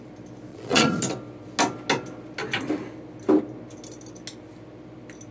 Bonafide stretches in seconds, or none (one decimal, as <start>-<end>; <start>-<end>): 0.0-0.5; 1.0-5.3